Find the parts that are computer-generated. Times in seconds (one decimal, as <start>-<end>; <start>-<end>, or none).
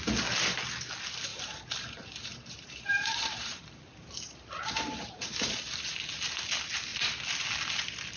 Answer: 1.3-5.9